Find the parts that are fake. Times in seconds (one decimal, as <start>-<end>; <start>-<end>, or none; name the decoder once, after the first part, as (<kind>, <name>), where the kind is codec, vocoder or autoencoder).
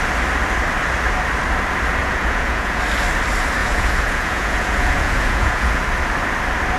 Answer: 2.0-2.8 (vocoder, Vocos); 3.6-5.8